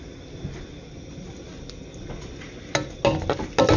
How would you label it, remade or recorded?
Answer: recorded